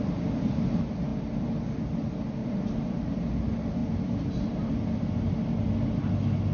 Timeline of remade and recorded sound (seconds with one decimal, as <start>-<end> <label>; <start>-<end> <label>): 0.0-2.4 recorded; 2.4-3.0 remade; 3.0-3.8 recorded; 3.8-4.3 remade; 4.3-6.5 recorded